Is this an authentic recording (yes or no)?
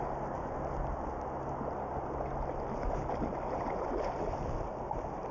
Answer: yes